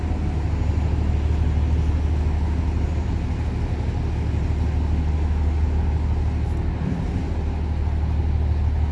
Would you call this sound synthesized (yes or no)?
no